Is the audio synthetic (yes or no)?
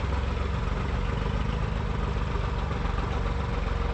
no